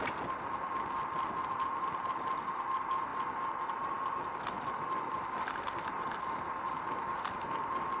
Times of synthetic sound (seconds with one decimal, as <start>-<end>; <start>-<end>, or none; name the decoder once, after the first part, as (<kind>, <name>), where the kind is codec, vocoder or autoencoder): none